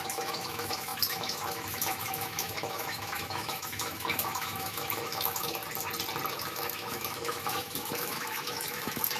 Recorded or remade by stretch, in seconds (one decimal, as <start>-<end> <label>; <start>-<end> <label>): 0.0-5.6 remade; 5.6-6.3 recorded; 6.3-9.2 remade